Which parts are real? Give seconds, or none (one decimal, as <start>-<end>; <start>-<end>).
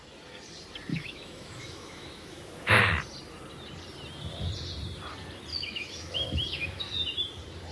0.0-0.9; 2.8-5.5; 6.9-7.7